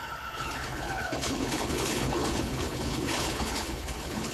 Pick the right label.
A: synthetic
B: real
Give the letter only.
A